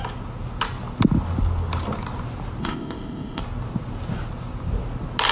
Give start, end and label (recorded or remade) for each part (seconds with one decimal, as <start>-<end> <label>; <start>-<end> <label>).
0.0-2.6 recorded; 2.6-3.4 remade; 3.4-5.3 recorded